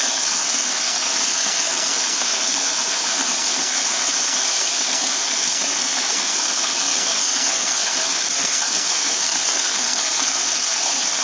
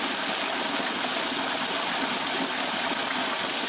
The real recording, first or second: second